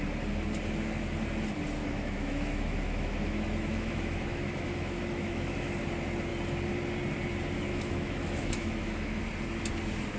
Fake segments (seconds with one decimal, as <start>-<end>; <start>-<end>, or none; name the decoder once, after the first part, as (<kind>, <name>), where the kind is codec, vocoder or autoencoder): 1.8-5.7 (autoencoder, DAC-VAE); 7.7-9.2